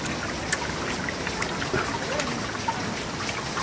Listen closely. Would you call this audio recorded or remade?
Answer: recorded